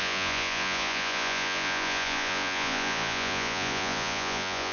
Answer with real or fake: fake